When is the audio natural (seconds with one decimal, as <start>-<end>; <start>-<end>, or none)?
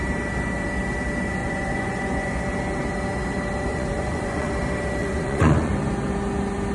0.0-1.4; 2.4-3.7; 4.5-5.0; 5.7-6.7